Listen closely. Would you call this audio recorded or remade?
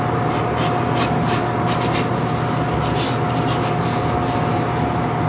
recorded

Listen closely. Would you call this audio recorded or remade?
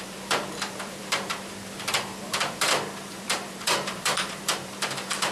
remade